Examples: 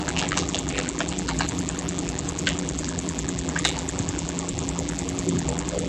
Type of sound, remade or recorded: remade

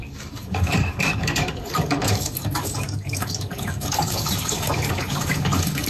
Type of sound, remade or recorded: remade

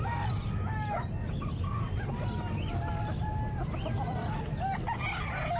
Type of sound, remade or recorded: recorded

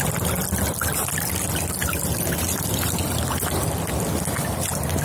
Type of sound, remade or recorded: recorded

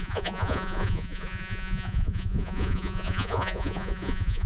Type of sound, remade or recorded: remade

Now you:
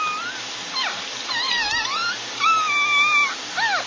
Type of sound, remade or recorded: recorded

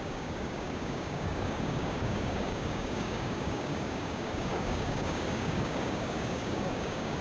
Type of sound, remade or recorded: remade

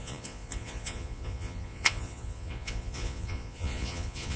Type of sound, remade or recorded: remade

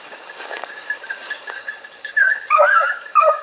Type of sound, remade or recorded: remade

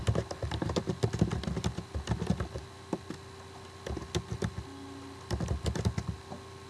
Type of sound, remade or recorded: recorded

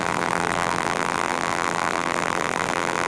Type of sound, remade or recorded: remade